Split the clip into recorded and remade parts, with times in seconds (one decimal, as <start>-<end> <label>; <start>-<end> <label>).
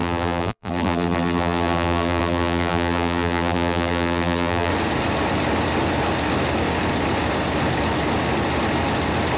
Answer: 0.0-4.7 remade; 4.7-9.4 recorded